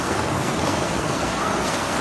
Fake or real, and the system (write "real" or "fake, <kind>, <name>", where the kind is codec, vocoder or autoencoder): fake, codec, SNAC